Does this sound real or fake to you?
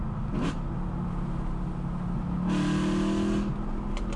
real